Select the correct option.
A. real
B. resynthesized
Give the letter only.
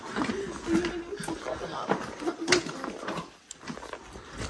A